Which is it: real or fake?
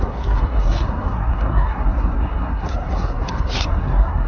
fake